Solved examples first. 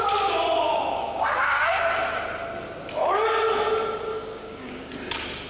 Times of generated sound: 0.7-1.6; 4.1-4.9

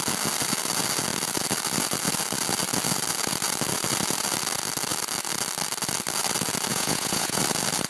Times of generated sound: 6.7-7.4

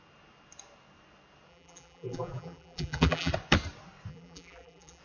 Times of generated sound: 1.5-3.3; 4.1-5.0